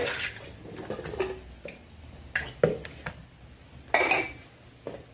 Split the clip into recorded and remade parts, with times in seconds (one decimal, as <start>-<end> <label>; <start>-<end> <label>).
0.0-5.1 recorded